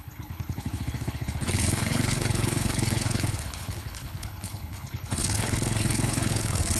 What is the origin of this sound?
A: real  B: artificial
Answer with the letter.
B